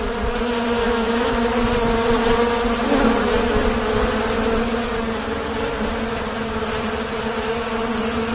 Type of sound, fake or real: real